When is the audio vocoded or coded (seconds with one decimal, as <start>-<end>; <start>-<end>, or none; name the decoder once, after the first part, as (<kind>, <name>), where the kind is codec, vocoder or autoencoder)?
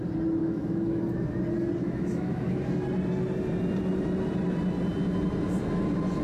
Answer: 0.4-1.0 (autoencoder, DAC-VAE); 1.8-2.7